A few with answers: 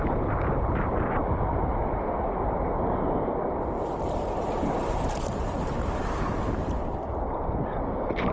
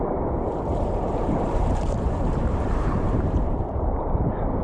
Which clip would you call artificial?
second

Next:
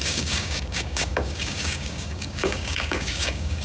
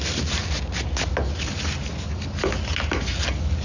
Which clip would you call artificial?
first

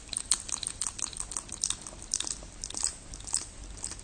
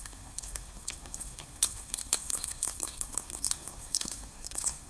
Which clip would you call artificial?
second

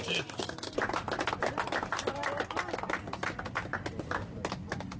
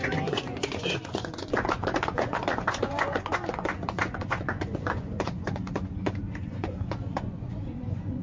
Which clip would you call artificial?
second